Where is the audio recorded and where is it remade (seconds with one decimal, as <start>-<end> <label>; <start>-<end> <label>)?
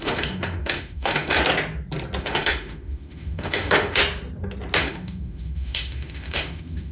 0.0-1.4 remade; 1.4-2.2 recorded; 2.2-4.0 remade; 4.0-4.8 recorded; 4.8-6.9 remade